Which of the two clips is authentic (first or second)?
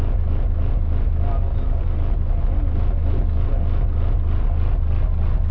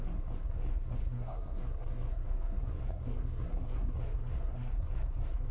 first